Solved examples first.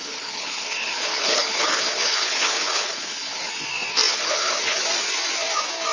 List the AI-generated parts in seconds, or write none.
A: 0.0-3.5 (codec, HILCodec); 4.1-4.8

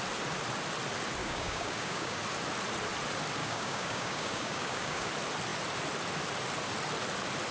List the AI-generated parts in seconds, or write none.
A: 1.2-2.2 (codec, DAC); 3.4-5.1

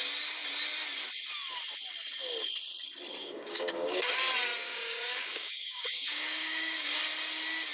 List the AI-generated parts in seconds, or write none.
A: 3.2-4.0 (codec, DAC); 4.6-7.0

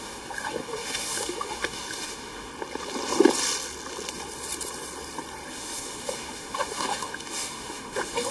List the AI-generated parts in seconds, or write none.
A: 0.0-2.5 (autoencoder, DAC-VAE); 5.5-8.3

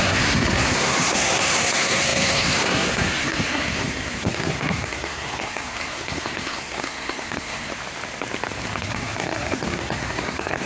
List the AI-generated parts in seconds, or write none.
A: 0.0-7.7 (codec, SNAC); 8.8-10.7

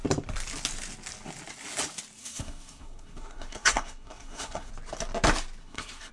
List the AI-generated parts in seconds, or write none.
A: 2.2-4.7 (codec, SNAC); 5.6-6.1

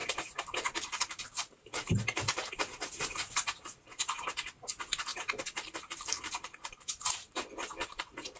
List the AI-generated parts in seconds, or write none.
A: 0.0-1.2 (vocoder, BigVGAN v2); 5.1-6.9

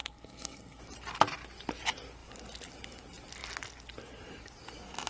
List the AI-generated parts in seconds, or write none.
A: 0.0-0.8 (codec, SNAC)